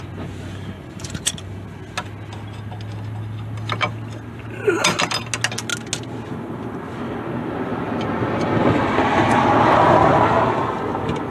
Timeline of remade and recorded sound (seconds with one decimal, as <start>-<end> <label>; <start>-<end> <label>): 0.0-0.8 recorded; 0.8-1.4 remade; 1.4-11.3 recorded